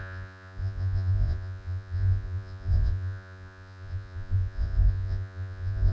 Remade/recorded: remade